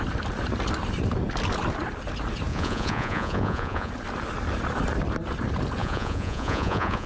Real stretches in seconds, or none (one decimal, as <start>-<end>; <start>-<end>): 0.0-2.5; 3.9-5.8